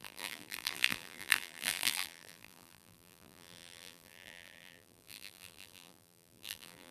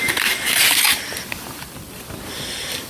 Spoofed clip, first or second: first